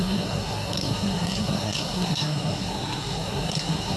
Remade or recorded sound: remade